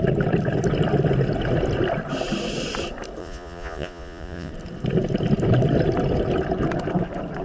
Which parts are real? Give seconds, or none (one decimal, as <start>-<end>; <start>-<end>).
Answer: 0.0-3.2; 4.5-7.4

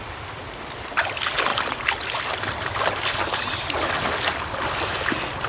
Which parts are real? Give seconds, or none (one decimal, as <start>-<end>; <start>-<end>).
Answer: 0.0-5.5

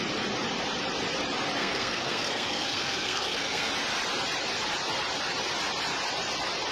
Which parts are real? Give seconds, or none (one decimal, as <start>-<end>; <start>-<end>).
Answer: 0.0-1.6; 3.7-6.7

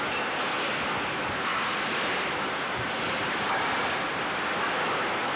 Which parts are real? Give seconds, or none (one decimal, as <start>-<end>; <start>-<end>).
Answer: 0.0-1.5; 4.7-5.4

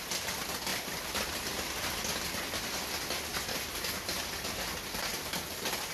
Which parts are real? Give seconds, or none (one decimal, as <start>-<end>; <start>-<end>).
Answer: 0.0-5.9

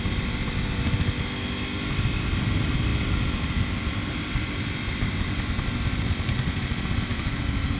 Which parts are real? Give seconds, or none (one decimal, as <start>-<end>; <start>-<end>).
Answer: 0.0-2.9; 6.4-7.1